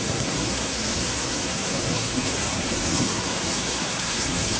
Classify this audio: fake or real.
fake